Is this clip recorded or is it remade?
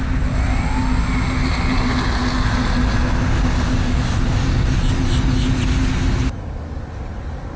recorded